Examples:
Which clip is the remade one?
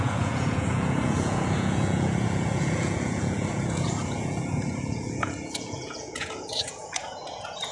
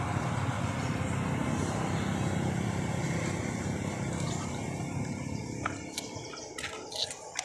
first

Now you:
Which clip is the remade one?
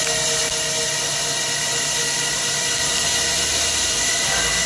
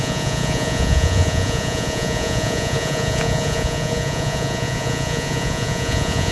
second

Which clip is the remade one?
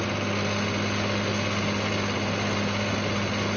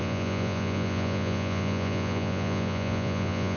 second